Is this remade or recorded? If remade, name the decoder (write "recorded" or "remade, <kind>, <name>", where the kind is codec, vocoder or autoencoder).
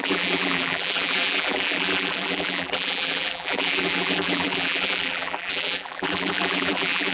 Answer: remade, vocoder, BigVGAN v2